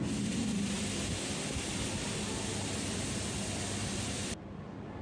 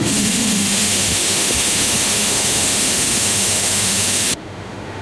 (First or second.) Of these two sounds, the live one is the first